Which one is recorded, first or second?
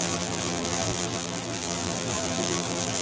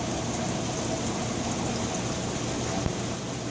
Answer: second